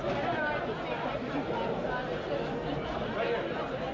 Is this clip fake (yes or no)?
no